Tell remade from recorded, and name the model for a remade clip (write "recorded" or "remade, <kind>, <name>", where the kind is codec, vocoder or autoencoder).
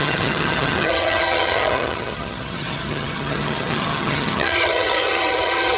remade, vocoder, HiFi-GAN